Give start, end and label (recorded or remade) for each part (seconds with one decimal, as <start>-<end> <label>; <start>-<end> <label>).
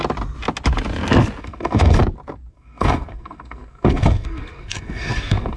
0.0-1.4 recorded; 1.4-2.0 remade; 2.0-2.5 recorded; 2.5-5.6 remade